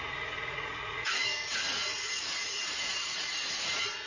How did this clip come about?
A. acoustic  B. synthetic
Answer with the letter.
B